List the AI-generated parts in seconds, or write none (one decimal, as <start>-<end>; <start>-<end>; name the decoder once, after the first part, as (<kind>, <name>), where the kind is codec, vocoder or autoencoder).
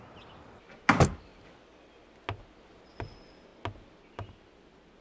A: none